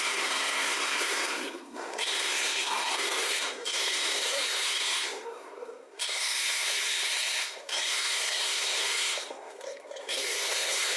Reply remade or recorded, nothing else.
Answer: remade